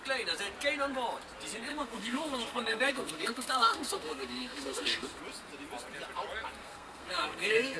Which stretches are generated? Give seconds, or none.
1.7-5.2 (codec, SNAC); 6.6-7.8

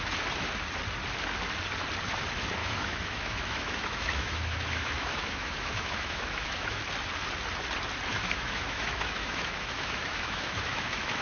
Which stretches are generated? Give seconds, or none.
2.6-6.8 (autoencoder, DAC-VAE); 8.1-11.2

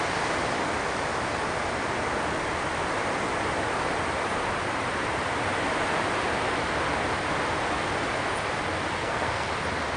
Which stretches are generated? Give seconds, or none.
9.0-9.5 (codec, SNAC)

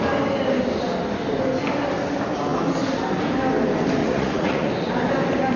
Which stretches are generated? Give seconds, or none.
4.0-4.7 (vocoder, Vocos)

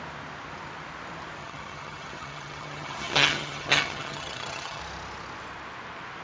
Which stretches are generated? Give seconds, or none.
1.4-4.8 (vocoder, HiFi-GAN)

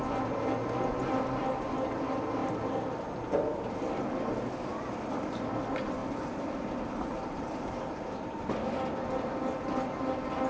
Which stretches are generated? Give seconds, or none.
2.4-3.0 (vocoder, BigVGAN v2); 3.5-4.0; 6.0-8.5

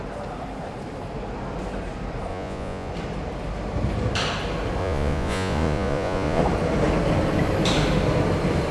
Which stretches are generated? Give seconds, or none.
2.3-2.9 (vocoder, Vocos); 4.8-6.4

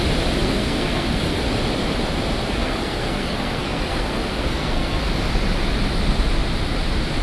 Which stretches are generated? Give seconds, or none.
0.4-1.4 (codec, SNAC); 2.6-5.1